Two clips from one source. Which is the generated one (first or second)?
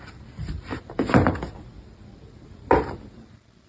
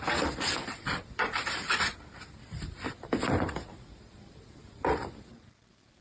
second